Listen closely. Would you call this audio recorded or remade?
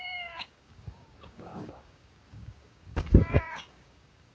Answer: remade